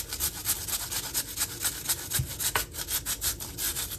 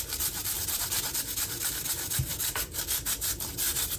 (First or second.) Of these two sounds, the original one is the first